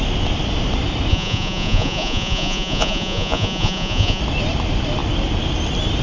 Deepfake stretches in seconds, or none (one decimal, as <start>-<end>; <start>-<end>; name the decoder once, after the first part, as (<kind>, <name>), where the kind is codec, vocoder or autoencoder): 1.1-4.2 (vocoder, Vocos)